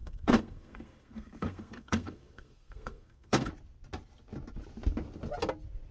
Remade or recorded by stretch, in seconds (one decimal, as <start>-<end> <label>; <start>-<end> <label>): 0.0-3.5 remade; 3.5-5.9 recorded